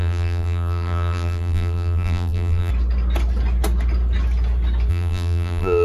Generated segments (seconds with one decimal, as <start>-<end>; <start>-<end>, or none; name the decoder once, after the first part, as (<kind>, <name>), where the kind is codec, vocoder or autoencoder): 0.0-2.7 (vocoder, BigVGAN v2); 4.9-5.8